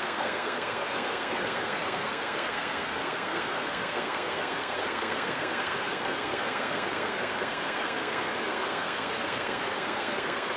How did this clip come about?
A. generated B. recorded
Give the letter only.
A